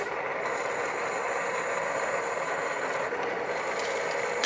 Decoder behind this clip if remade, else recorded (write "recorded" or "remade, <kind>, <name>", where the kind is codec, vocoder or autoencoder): remade, vocoder, BigVGAN v2